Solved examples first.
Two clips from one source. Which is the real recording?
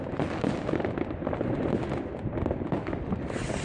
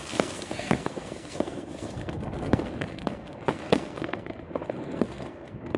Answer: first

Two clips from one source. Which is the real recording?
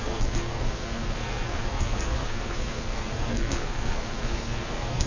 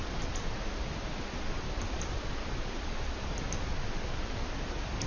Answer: second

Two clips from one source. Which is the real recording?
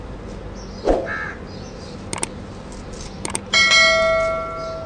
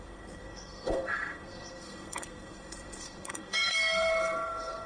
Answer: first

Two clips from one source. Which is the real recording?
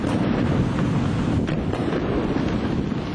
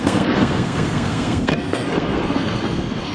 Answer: first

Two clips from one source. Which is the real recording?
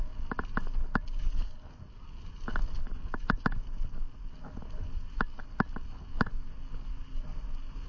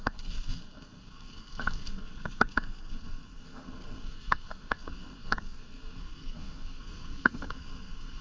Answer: first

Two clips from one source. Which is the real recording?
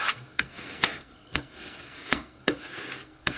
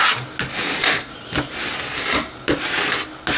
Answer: second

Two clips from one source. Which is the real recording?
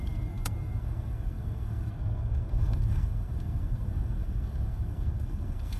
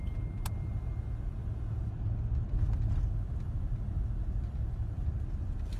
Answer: second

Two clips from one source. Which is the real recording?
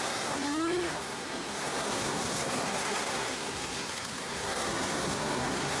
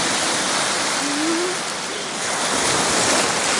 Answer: second